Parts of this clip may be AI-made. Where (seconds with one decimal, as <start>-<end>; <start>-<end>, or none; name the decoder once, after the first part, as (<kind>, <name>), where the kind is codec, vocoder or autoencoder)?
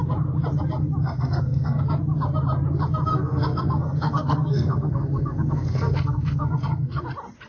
1.0-1.8 (codec, SNAC); 3.1-7.0